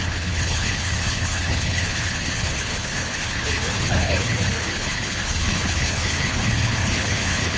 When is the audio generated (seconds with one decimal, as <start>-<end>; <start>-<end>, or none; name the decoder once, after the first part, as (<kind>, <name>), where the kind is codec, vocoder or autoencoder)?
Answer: 0.0-7.6 (codec, HILCodec)